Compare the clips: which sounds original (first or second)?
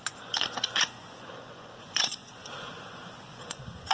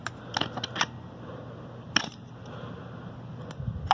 second